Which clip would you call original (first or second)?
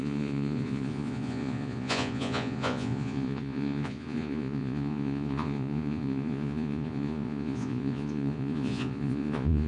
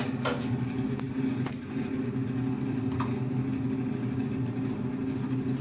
second